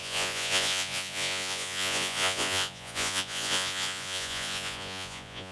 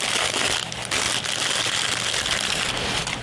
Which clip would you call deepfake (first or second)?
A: first